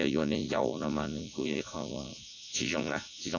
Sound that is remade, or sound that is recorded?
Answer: remade